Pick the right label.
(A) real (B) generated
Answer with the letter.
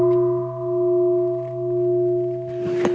A